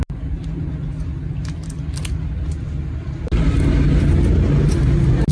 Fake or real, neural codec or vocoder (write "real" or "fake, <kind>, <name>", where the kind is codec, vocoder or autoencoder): real